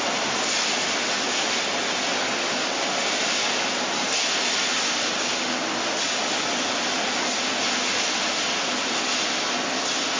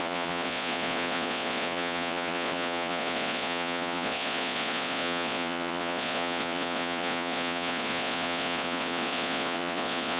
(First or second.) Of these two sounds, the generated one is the second